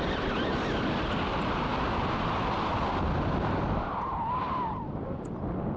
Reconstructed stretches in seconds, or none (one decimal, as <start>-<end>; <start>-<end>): none

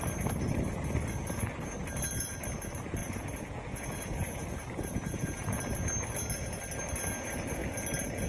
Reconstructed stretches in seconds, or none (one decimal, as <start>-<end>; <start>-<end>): 3.0-5.4

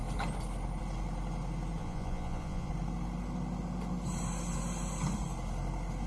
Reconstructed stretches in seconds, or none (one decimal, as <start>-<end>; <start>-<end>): 1.8-2.7

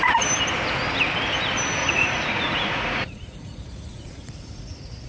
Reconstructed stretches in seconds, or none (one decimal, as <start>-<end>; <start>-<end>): 1.8-5.1

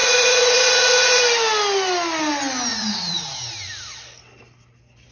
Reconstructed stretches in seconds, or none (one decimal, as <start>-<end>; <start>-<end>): 0.0-1.2; 2.7-3.2

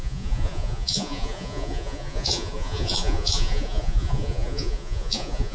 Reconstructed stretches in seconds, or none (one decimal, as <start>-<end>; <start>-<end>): 0.0-5.5